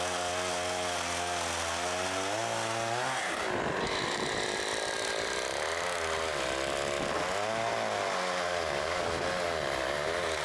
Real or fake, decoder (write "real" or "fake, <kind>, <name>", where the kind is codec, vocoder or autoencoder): real